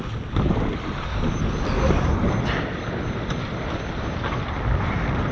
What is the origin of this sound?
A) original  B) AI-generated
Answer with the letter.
A